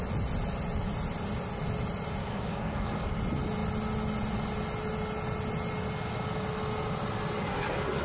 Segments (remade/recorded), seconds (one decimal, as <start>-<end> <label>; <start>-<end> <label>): 0.0-2.2 recorded; 2.2-3.2 remade; 3.2-8.0 recorded